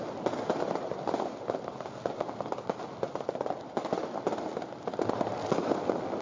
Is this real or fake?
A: real